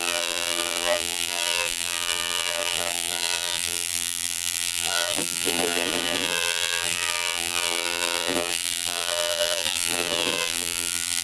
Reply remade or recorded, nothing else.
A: remade